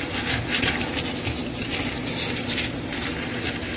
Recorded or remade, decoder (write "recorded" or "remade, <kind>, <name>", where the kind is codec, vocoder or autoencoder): recorded